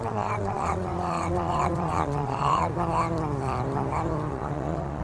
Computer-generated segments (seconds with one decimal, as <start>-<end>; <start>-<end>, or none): 0.0-2.7; 4.3-5.0